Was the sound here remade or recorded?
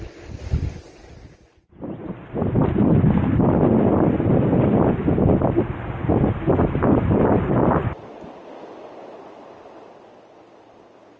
recorded